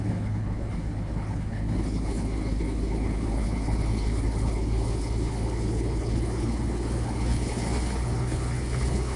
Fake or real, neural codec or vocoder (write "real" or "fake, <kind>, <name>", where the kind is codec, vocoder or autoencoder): fake, codec, HILCodec